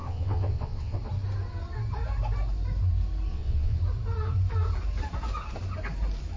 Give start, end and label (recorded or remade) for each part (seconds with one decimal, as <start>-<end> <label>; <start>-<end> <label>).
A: 0.0-1.0 remade; 1.0-3.3 recorded; 3.3-3.8 remade; 3.8-6.4 recorded